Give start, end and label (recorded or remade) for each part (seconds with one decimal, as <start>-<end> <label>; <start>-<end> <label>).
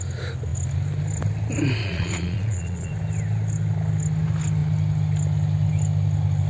0.0-1.8 recorded; 1.8-2.9 remade; 2.9-6.5 recorded